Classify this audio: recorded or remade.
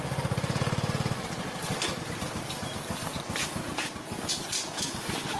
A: recorded